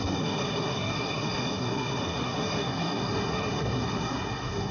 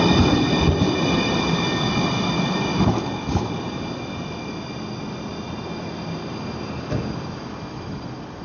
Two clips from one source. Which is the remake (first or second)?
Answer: first